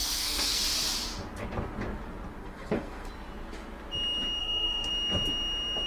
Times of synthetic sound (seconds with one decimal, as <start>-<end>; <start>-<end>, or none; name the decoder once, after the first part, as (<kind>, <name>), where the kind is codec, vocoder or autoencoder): 0.0-0.6 (codec, SNAC); 2.4-3.1; 4.4-4.9